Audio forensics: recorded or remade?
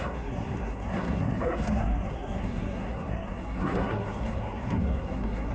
remade